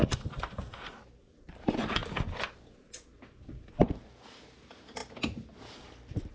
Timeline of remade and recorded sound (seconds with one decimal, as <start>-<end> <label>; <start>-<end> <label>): 0.0-1.2 recorded; 1.2-2.0 remade; 2.0-4.3 recorded; 4.3-5.0 remade; 5.0-6.3 recorded